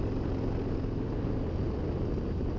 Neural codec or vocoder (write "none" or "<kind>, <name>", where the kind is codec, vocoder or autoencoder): none